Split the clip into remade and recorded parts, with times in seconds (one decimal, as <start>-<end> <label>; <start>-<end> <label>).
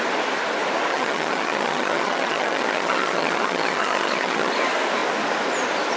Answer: 0.0-0.9 recorded; 0.9-4.5 remade; 4.5-6.0 recorded